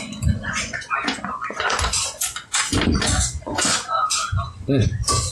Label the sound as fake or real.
fake